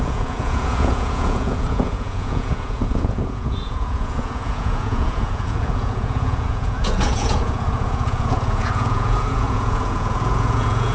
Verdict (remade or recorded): remade